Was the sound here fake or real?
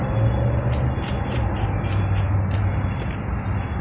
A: real